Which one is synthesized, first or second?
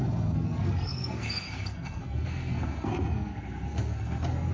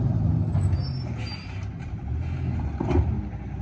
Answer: first